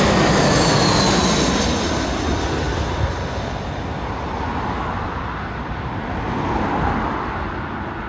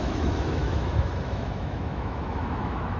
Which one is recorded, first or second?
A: first